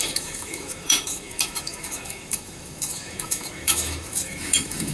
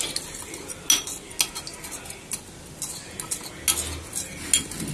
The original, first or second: second